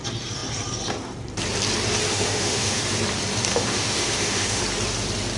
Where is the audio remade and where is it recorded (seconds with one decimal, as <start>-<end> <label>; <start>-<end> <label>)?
0.0-2.1 recorded; 2.1-2.8 remade; 2.8-3.5 recorded; 3.5-4.6 remade; 4.6-5.4 recorded